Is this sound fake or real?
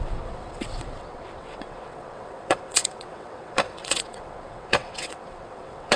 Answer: fake